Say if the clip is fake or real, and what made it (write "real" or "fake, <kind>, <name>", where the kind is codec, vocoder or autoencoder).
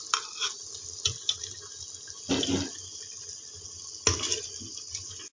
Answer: real